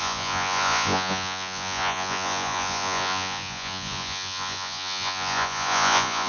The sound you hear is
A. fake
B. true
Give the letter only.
A